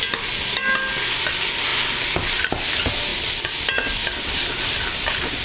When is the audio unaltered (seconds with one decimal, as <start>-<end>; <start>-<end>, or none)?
0.0-3.1; 3.8-5.4